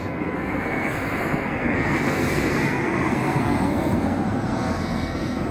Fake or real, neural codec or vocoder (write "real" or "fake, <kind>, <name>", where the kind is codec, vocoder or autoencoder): fake, codec, SNAC